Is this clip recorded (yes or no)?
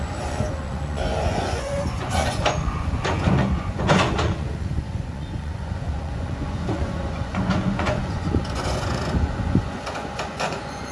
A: no